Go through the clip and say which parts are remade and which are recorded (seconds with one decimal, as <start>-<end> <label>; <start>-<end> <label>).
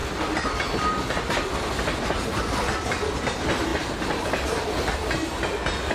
0.0-3.7 recorded; 3.7-4.7 remade; 4.7-5.9 recorded